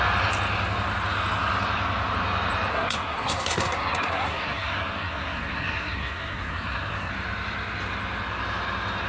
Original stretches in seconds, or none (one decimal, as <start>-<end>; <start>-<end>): 0.0-2.7; 7.1-9.1